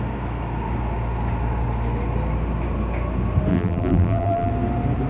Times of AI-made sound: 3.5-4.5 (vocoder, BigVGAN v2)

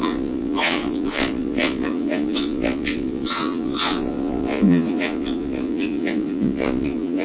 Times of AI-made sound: 0.0-7.2 (vocoder, Vocos)

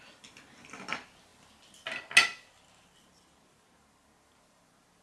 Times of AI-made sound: none

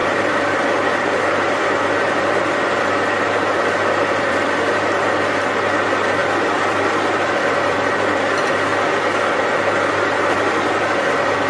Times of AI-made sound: 0.0-8.7 (vocoder, BigVGAN v2); 9.4-11.5

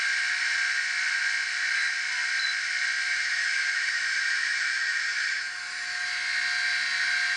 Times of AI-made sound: 3.1-6.1 (autoencoder, DAC-VAE)

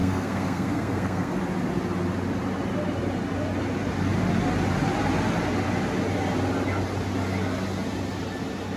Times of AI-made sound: 0.0-1.3 (codec, SNAC)